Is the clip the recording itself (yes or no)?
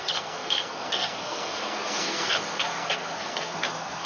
no